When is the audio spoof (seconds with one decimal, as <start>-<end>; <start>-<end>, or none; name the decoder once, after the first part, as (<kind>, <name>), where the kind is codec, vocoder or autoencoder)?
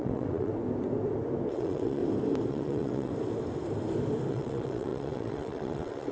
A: 0.0-0.5 (vocoder, WaveNeXt); 1.5-2.0; 2.5-3.1; 4.3-6.1